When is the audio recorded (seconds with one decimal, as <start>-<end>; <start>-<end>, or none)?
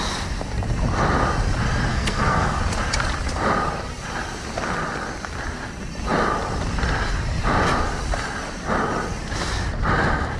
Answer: 0.0-1.9; 2.6-10.4